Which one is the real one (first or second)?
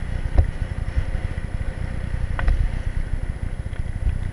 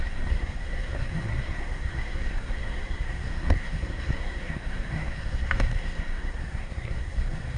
first